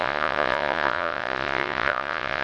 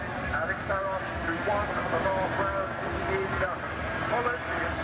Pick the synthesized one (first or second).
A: first